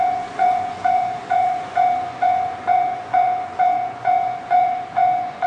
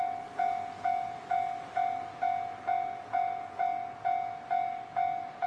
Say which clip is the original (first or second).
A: second